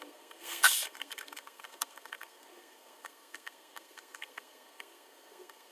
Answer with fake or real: fake